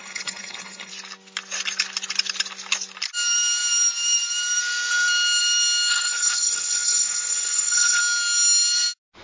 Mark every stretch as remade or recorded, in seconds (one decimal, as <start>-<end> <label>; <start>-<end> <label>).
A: 0.0-0.9 remade; 0.9-5.9 recorded; 5.9-8.0 remade; 8.0-9.2 recorded